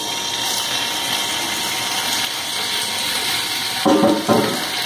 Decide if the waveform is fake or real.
real